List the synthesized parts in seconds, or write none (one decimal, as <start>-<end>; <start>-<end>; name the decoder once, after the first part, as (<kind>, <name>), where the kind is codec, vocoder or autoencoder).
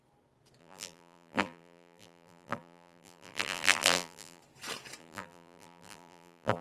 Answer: 0.6-4.4 (vocoder, BigVGAN v2); 5.0-6.6